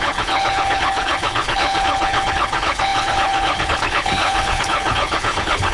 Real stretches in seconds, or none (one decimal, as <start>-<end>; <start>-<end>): none